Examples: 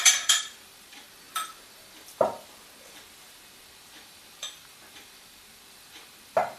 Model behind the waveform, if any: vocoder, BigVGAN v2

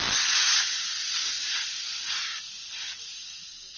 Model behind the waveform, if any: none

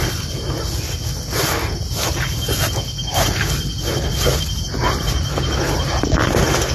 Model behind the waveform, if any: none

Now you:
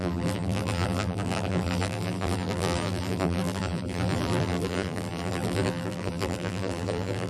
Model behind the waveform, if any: vocoder, BigVGAN v2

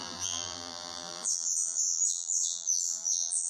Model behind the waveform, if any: vocoder, BigVGAN v2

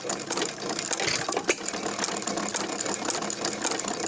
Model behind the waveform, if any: none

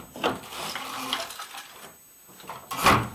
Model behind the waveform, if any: none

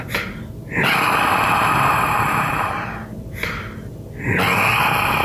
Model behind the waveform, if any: none